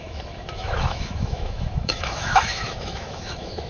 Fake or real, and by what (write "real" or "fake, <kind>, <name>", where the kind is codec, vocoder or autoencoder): fake, autoencoder, DAC-VAE